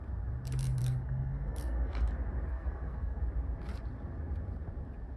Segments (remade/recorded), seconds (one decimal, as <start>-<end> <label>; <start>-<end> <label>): 0.0-0.8 recorded; 0.8-2.1 remade; 2.1-2.5 recorded; 2.5-3.2 remade; 3.2-5.2 recorded